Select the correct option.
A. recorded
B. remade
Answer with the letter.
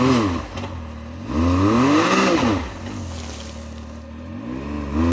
A